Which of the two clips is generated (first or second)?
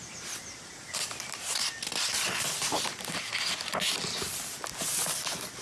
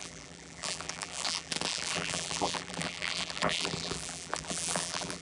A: second